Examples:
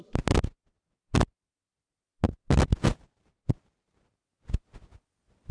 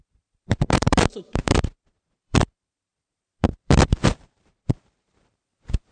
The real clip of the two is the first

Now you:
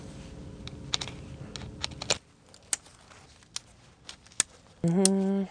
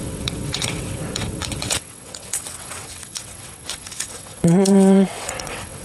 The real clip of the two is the first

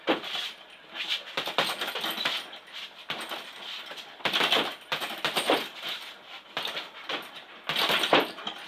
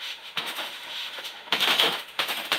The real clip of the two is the first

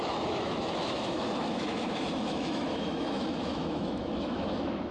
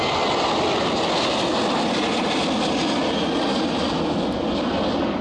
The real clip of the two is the second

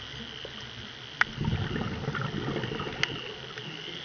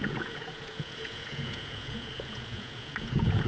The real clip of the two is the first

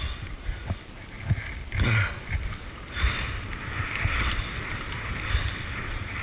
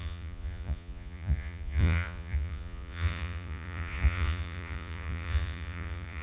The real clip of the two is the first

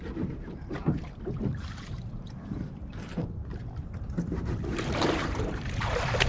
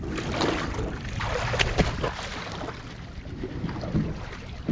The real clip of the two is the second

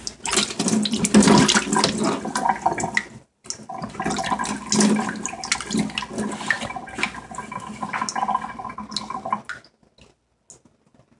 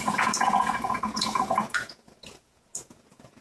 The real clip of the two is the first